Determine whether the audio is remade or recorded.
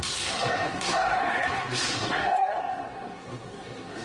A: remade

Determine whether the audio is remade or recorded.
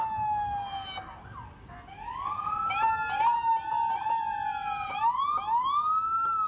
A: recorded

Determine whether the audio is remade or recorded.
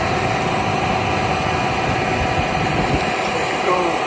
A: recorded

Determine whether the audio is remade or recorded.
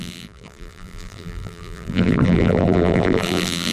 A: remade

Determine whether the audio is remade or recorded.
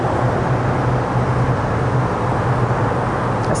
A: recorded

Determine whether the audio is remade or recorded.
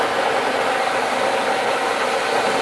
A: recorded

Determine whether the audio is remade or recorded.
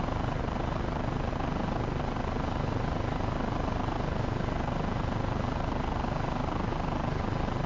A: recorded